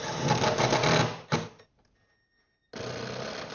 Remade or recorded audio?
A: recorded